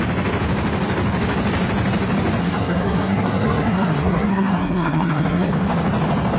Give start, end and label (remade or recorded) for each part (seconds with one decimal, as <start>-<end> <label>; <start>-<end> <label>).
0.0-2.4 recorded; 2.4-5.5 remade; 5.5-6.4 recorded